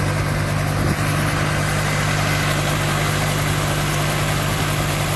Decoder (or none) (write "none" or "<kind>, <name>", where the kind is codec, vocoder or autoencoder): none